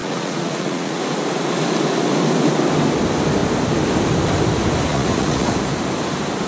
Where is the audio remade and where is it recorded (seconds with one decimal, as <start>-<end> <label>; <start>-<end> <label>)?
0.0-1.0 remade; 1.0-4.9 recorded; 4.9-5.5 remade; 5.5-6.5 recorded